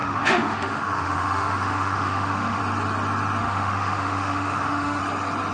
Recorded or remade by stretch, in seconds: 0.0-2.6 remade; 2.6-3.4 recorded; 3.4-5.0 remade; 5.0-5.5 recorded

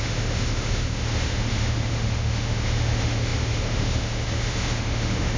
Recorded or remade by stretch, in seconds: 0.0-5.4 remade

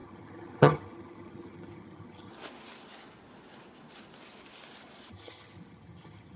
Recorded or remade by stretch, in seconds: 0.0-2.3 remade; 2.3-5.1 recorded; 5.1-6.4 remade

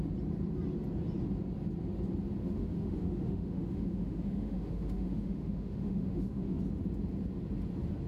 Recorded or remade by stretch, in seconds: 0.0-2.4 recorded; 2.4-6.6 remade; 6.6-8.1 recorded

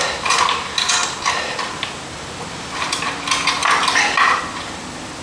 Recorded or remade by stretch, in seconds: 0.0-5.2 recorded

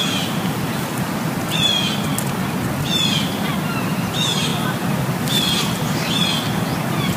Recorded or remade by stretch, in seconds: 0.0-7.2 recorded

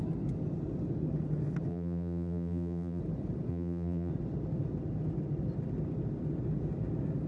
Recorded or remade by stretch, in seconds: 0.0-1.7 recorded; 1.7-3.0 remade; 3.0-3.5 recorded; 3.5-4.1 remade; 4.1-7.3 recorded